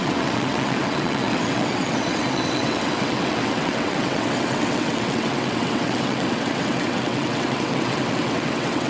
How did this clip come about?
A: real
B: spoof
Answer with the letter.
B